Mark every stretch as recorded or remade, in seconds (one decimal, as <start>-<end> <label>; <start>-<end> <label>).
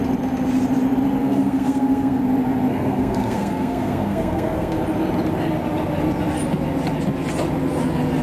0.0-1.2 recorded; 1.2-2.2 remade; 2.2-2.7 recorded; 2.7-4.8 remade; 4.8-8.2 recorded